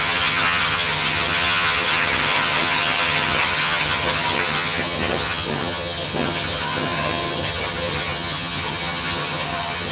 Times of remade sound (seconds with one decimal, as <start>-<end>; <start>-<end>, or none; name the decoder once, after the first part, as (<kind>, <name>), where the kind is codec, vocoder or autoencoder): 0.0-9.9 (vocoder, HiFi-GAN)